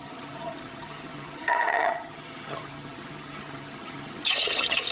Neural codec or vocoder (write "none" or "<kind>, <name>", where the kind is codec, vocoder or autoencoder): vocoder, HiFi-GAN